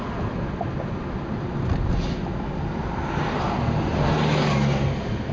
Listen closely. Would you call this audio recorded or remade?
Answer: recorded